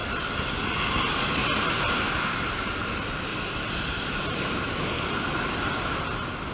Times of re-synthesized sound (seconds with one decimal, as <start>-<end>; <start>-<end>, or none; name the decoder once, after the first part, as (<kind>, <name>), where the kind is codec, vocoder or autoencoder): 0.0-0.7 (vocoder, BigVGAN v2); 1.4-2.9; 3.3-5.0

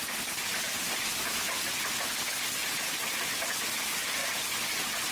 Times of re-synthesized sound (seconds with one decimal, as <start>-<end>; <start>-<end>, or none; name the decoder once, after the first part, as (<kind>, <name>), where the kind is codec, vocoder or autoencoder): 0.5-1.1 (vocoder, BigVGAN v2); 2.6-3.4